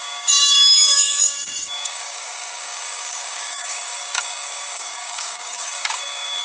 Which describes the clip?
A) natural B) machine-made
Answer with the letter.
B